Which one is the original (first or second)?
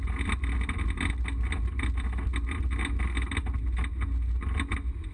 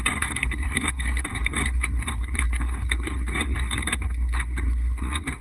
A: first